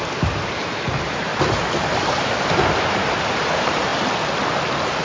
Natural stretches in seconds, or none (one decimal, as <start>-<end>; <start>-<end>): 1.3-2.0; 3.9-5.0